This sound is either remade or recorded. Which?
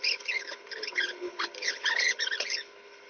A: remade